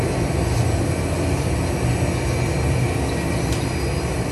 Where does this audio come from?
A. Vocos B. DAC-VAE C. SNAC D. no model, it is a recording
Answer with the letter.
D